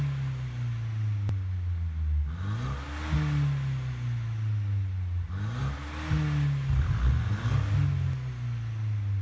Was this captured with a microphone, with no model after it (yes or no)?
yes